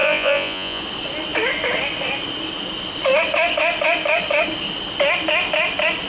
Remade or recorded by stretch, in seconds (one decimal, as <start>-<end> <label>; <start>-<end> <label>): 0.0-0.8 remade; 0.8-6.1 recorded